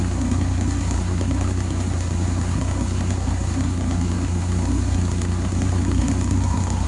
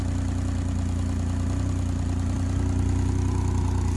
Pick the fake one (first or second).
first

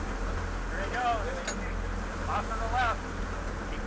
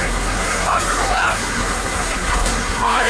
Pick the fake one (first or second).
second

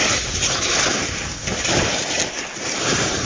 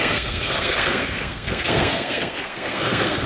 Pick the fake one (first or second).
second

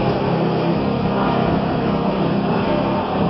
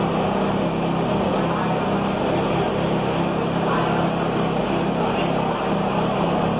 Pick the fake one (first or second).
first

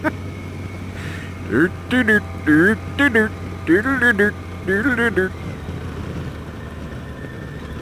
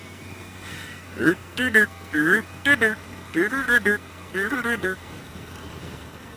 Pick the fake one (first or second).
second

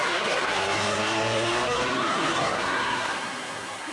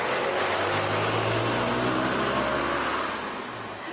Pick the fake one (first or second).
first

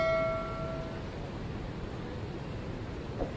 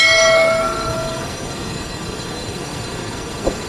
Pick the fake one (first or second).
second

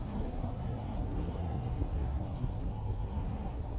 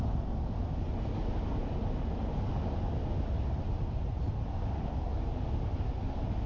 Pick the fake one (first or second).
first